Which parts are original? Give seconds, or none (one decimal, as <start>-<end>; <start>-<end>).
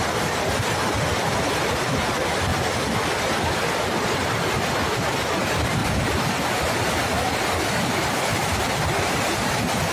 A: 0.0-5.8; 6.3-9.9